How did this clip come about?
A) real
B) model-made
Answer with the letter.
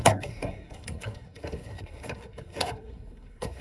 B